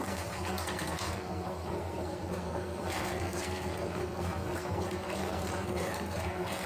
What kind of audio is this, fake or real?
fake